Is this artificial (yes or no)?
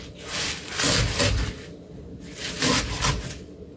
no